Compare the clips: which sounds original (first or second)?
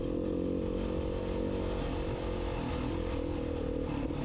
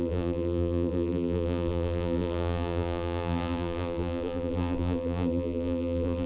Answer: first